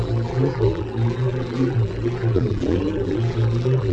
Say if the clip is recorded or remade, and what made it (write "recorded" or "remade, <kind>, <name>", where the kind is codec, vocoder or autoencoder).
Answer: remade, vocoder, BigVGAN v2